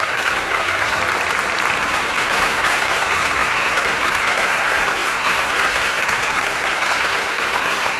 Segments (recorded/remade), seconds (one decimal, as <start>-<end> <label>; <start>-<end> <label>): 0.0-1.0 remade; 1.0-1.8 recorded; 1.8-8.0 remade